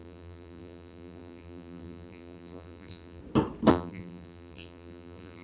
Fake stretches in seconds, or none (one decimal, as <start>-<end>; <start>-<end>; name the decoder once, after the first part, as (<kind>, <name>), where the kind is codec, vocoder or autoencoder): 0.0-3.2 (vocoder, BigVGAN v2); 3.7-5.4